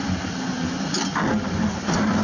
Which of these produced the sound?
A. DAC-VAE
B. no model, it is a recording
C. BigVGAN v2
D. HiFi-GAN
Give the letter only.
B